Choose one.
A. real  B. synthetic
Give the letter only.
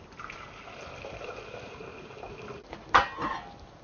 A